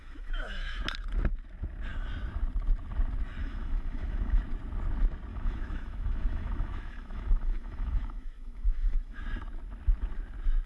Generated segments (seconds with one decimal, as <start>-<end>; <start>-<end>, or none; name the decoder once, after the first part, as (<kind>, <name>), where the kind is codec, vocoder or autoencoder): 0.0-0.8 (autoencoder, DAC-VAE); 3.4-4.4; 5.3-9.2